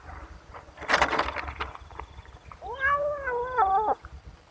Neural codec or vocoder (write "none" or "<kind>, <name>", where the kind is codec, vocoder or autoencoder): none